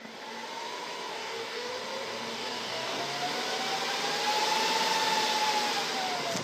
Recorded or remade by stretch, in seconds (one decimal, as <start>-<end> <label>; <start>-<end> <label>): 0.0-1.1 recorded; 1.1-1.7 remade; 1.7-2.3 recorded; 2.3-3.0 remade; 3.0-6.4 recorded